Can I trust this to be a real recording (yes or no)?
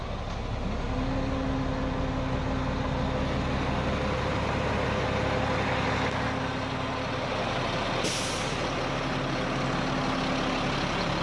yes